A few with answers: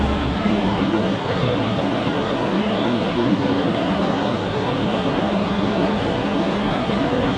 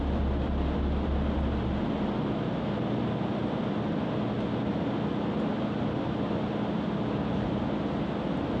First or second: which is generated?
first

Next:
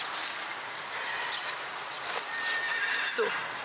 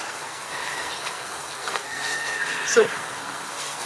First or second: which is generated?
second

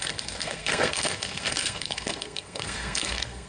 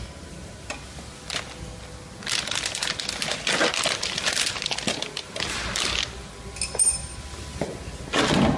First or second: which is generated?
first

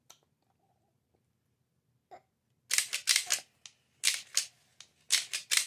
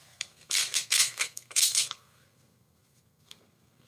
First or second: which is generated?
second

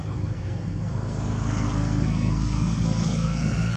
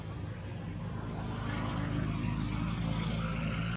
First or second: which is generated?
first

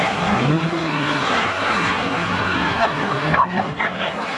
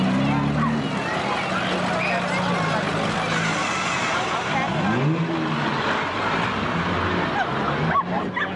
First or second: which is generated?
first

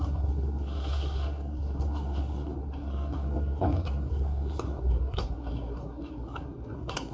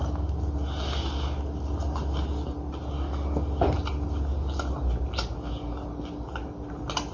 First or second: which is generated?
first